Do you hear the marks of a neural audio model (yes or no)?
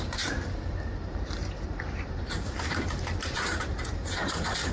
yes